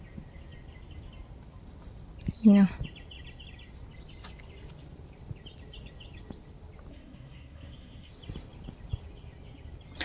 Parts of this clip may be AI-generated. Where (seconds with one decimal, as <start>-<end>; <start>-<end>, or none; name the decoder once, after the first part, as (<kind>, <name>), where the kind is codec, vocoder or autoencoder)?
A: 6.9-8.1 (codec, SNAC)